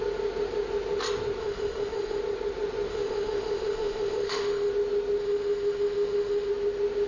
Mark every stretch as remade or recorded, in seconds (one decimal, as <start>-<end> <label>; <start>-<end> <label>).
0.0-1.4 recorded; 1.4-2.2 remade; 2.2-2.9 recorded; 2.9-4.7 remade; 4.7-5.2 recorded; 5.2-6.5 remade; 6.5-7.1 recorded